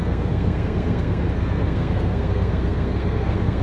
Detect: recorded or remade remade